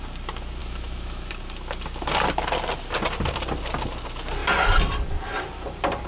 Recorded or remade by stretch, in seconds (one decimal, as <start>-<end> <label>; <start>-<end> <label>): 0.0-0.6 recorded; 0.6-1.3 remade; 1.3-6.1 recorded